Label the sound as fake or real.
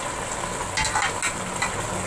real